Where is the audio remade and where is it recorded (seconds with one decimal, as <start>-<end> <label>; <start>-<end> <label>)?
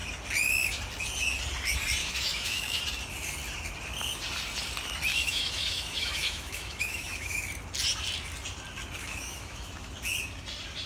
0.0-2.0 recorded; 2.0-2.8 remade; 2.8-5.1 recorded; 5.1-7.5 remade; 7.5-9.0 recorded; 9.0-9.9 remade; 9.9-10.9 recorded